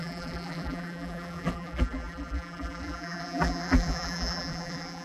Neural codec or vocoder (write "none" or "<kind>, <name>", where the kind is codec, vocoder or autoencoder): vocoder, BigVGAN v2